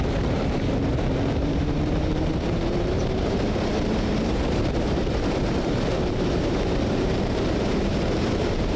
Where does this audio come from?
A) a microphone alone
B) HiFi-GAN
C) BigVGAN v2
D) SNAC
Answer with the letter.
C